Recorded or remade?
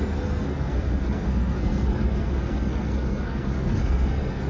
remade